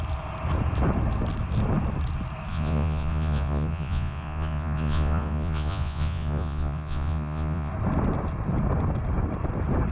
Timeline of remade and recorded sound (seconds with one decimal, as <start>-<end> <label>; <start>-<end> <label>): 0.0-2.5 recorded; 2.5-7.7 remade; 7.7-9.9 recorded